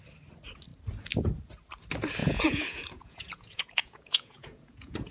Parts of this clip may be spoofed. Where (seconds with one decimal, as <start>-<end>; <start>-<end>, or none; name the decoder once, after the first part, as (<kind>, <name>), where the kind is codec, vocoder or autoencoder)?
2.2-5.1 (vocoder, Vocos)